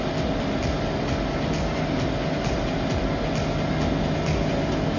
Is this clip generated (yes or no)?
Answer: no